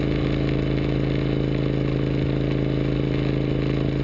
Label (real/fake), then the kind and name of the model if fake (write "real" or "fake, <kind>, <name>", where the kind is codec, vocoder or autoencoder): real